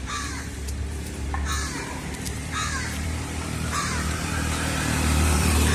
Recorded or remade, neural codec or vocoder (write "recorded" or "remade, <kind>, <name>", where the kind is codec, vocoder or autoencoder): remade, vocoder, BigVGAN v2